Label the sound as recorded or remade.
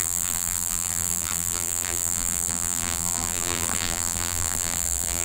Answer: remade